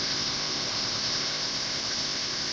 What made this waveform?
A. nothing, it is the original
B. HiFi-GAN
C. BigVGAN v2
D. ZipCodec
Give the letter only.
D